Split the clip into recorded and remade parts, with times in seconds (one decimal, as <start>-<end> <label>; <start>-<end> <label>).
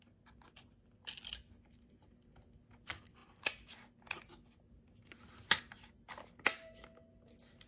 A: 0.0-7.7 recorded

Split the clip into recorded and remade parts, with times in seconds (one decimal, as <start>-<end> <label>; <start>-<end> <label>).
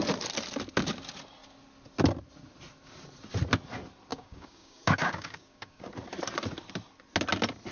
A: 0.0-4.1 recorded; 4.1-5.9 remade; 5.9-7.7 recorded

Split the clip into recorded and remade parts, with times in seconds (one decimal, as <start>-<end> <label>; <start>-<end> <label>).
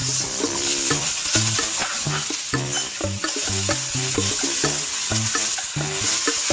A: 0.0-1.1 remade; 1.1-6.5 recorded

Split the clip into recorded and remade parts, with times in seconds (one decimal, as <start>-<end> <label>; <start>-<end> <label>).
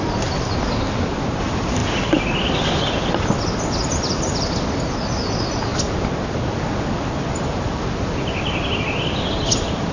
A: 0.0-9.9 recorded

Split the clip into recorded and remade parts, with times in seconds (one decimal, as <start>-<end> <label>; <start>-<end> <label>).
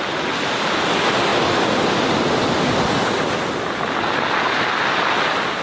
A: 0.0-5.6 recorded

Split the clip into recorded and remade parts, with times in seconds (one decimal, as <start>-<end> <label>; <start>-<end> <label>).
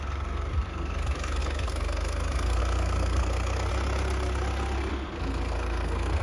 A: 0.0-3.7 remade; 3.7-4.9 recorded; 4.9-6.2 remade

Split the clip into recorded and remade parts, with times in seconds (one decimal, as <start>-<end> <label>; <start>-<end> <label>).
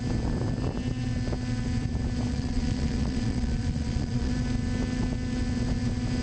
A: 0.0-2.3 recorded; 2.3-4.3 remade; 4.3-6.2 recorded